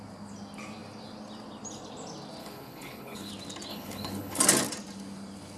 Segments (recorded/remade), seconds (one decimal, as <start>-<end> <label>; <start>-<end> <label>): 0.0-2.4 recorded; 2.4-3.3 remade; 3.3-3.7 recorded; 3.7-4.4 remade; 4.4-5.6 recorded